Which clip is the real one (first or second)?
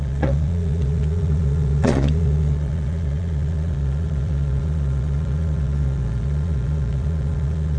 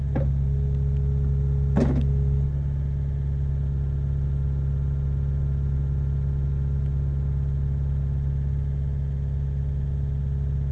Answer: second